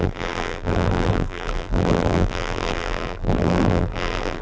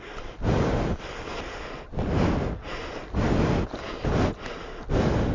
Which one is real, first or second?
second